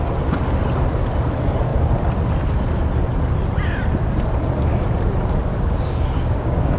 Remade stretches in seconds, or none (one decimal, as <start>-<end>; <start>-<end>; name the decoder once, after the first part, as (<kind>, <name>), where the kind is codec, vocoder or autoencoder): 5.5-6.8 (codec, DAC)